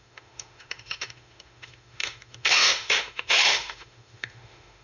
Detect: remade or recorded remade